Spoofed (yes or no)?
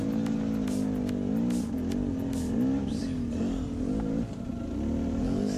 no